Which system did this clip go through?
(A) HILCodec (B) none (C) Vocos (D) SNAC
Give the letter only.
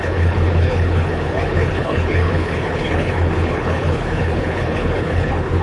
A